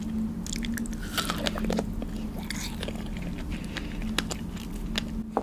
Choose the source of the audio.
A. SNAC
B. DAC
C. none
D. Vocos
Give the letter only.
C